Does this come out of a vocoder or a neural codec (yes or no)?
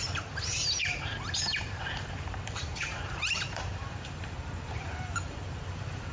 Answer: yes